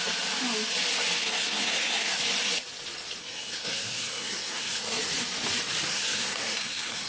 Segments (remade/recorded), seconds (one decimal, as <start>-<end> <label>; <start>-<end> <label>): 0.0-1.2 recorded; 1.2-2.2 remade; 2.2-3.2 recorded; 3.2-5.0 remade; 5.0-5.9 recorded; 5.9-7.1 remade